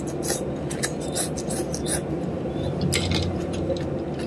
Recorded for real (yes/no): yes